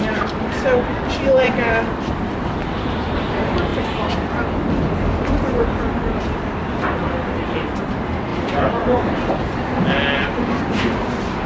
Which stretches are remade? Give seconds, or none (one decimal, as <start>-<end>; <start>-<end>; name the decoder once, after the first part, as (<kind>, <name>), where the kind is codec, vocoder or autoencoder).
0.9-1.7 (vocoder, BigVGAN v2); 3.7-6.2; 8.3-9.3